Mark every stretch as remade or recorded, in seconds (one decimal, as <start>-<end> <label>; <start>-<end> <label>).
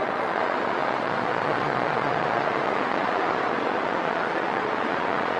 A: 0.0-5.4 remade